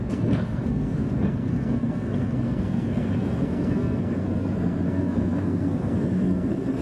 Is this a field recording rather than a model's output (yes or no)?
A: no